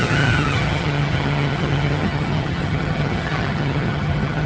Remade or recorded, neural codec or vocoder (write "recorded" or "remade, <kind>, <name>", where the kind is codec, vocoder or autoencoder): remade, vocoder, HiFi-GAN